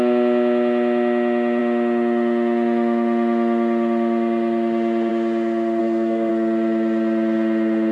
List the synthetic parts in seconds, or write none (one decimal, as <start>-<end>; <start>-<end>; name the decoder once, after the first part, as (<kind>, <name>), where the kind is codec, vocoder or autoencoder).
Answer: 5.8-6.3 (codec, SNAC)